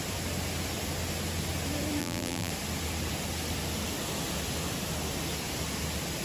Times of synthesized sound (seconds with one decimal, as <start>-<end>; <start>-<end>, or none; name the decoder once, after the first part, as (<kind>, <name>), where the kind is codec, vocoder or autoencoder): 2.0-2.5 (vocoder, BigVGAN v2)